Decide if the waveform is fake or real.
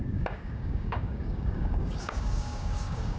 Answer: fake